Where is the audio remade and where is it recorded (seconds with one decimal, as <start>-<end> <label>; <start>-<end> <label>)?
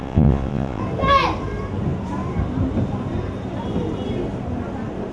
0.0-0.8 remade; 0.8-5.1 recorded